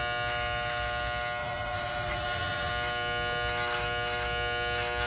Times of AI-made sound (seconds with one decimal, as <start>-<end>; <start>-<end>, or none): 1.4-2.7

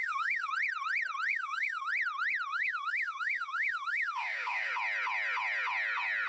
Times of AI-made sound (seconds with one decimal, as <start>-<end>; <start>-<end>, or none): 0.0-0.5; 1.3-1.9; 2.5-4.7